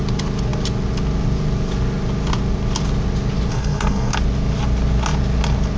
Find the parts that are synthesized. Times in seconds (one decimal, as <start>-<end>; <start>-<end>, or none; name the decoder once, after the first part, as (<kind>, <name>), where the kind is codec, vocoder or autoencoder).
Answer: 3.5-4.1 (codec, SNAC)